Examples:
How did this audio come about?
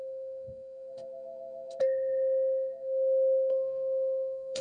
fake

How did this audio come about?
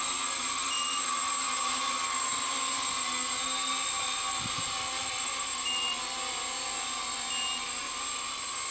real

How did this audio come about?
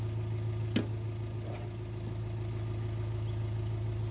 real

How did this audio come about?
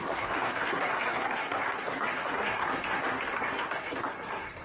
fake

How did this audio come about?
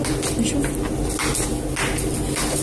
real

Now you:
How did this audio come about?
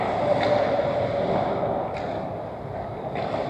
real